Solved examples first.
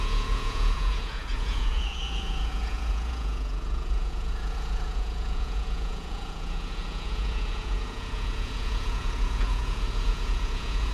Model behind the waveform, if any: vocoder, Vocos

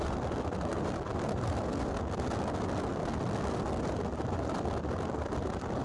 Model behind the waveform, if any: none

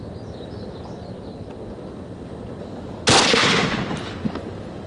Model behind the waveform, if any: none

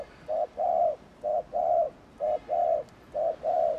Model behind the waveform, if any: none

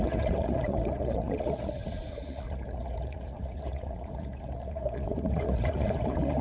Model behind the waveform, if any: vocoder, Vocos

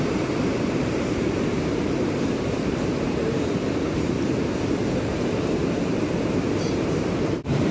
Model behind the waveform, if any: vocoder, BigVGAN v2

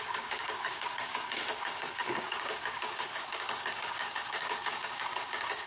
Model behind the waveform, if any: codec, DAC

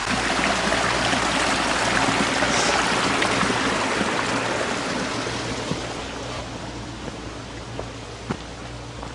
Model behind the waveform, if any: none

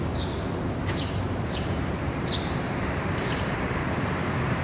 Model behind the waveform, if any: vocoder, BigVGAN v2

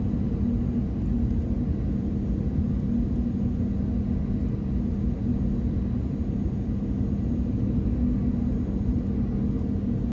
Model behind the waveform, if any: none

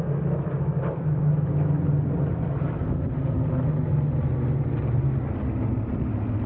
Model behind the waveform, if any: none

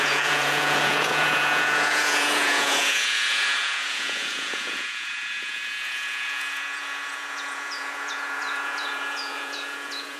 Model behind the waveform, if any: vocoder, Vocos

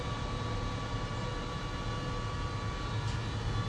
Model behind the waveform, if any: none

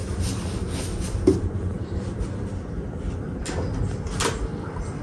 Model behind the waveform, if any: none